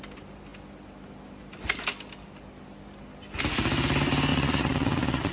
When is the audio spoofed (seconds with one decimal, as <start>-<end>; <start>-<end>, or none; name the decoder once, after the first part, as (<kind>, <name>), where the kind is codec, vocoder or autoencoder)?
4.3-5.3 (vocoder, Vocos)